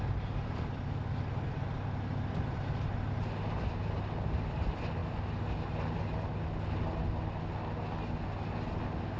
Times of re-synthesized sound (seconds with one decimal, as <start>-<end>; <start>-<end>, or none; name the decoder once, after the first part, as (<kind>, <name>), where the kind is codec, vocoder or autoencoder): none